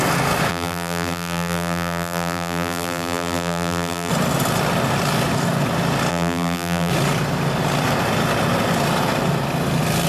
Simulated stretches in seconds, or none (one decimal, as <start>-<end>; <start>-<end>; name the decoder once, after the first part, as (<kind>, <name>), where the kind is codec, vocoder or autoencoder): 0.5-4.1 (vocoder, BigVGAN v2); 6.1-6.9